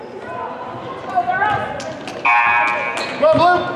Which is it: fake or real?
real